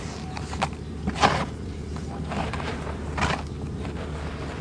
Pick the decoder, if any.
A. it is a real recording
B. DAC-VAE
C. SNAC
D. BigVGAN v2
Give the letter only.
D